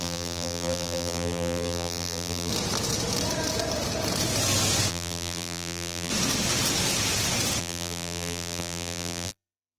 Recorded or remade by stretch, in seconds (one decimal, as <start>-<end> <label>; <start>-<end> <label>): 0.0-2.5 remade; 2.5-4.9 recorded; 4.9-6.1 remade; 6.1-7.6 recorded; 7.6-9.8 remade